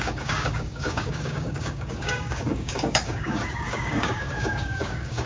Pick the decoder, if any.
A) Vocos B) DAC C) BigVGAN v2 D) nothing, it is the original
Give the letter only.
B